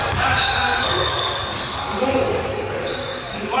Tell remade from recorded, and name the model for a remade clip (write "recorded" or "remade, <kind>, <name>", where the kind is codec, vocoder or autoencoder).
remade, codec, DAC